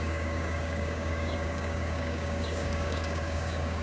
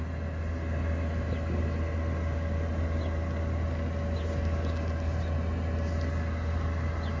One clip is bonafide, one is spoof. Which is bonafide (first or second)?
second